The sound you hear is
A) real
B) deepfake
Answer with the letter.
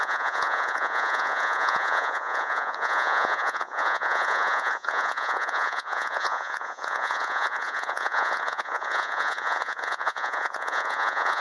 B